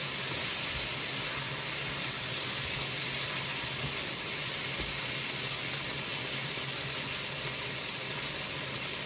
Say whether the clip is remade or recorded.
recorded